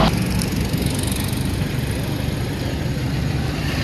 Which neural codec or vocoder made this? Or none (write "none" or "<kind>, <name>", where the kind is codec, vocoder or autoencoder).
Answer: none